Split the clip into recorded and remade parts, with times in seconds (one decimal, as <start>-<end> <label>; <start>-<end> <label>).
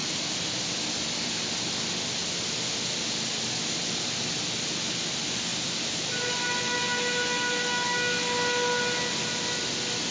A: 0.0-10.1 recorded